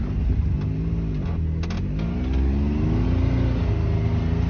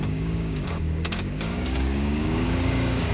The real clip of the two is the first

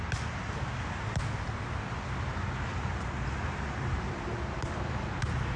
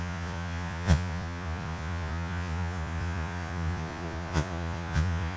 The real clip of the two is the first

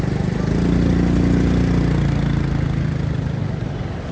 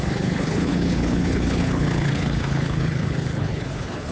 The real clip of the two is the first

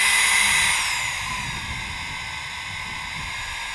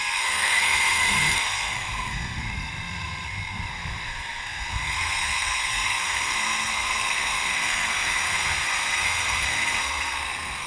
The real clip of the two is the first